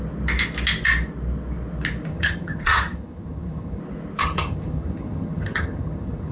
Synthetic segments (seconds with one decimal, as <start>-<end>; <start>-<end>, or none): 2.1-3.8; 4.2-6.3